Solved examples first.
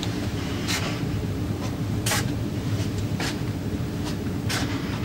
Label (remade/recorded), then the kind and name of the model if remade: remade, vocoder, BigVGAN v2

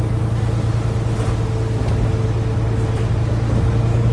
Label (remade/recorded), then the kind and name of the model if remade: recorded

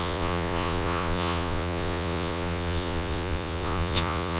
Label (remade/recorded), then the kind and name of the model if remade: remade, vocoder, Vocos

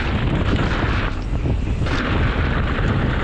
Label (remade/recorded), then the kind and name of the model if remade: recorded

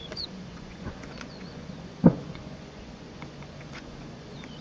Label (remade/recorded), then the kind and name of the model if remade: remade, vocoder, Vocos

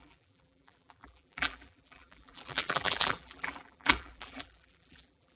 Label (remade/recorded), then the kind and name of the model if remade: remade, vocoder, BigVGAN v2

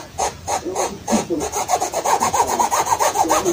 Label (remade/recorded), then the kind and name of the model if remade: remade, vocoder, Vocos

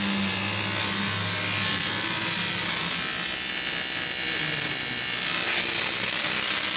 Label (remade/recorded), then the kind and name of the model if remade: recorded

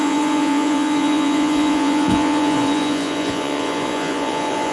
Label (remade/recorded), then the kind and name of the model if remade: remade, vocoder, Vocos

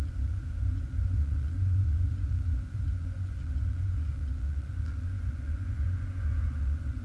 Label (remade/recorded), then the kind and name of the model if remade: remade, vocoder, Vocos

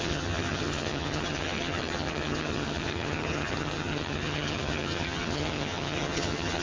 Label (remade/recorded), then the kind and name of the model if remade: remade, vocoder, HiFi-GAN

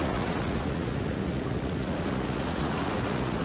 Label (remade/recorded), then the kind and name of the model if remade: remade, vocoder, Vocos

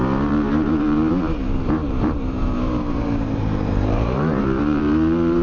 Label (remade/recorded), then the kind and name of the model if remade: remade, vocoder, BigVGAN v2